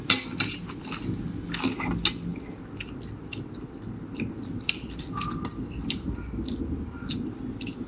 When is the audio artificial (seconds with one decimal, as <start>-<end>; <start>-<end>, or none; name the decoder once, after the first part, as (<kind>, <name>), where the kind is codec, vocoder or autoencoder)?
none